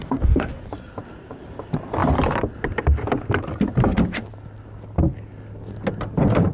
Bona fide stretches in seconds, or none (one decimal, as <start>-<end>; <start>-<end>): 0.5-6.5